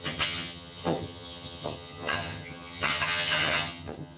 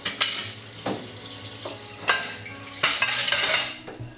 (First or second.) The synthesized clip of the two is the first